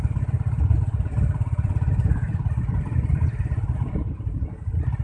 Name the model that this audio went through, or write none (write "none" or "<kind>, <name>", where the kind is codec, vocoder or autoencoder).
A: vocoder, BigVGAN v2